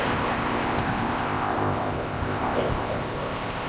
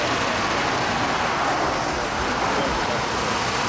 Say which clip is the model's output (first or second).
first